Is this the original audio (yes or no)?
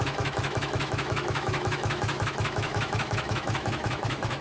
no